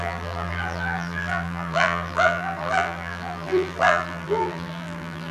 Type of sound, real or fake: fake